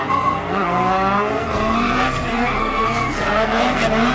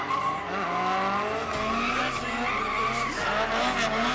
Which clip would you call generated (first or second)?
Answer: first